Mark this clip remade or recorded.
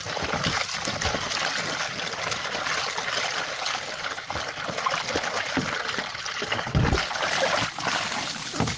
recorded